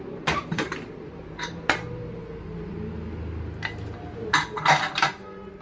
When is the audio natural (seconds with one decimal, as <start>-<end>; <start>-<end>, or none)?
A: 2.2-4.3